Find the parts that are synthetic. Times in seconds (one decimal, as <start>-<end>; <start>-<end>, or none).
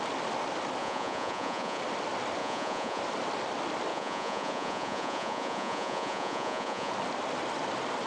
0.8-1.8; 2.4-3.0; 3.9-6.9